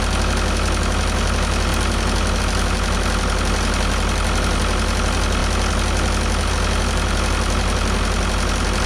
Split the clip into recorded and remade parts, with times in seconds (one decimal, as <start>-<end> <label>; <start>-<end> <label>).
0.0-8.9 recorded